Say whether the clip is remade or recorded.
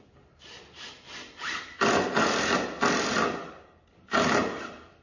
recorded